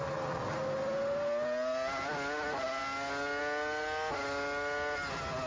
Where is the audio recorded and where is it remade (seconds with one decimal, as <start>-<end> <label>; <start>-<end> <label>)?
0.0-5.5 recorded